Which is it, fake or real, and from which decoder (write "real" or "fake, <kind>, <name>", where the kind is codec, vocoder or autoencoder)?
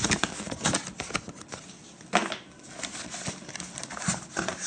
real